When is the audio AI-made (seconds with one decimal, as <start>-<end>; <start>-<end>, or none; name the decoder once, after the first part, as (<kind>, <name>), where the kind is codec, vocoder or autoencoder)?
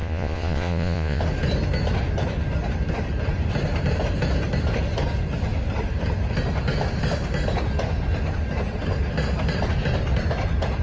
0.0-1.2 (vocoder, Vocos)